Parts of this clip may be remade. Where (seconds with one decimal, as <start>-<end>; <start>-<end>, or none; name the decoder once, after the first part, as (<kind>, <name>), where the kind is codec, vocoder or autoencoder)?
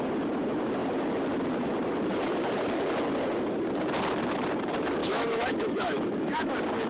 5.0-6.5 (autoencoder, DAC-VAE)